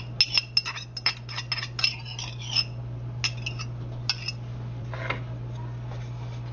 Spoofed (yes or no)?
no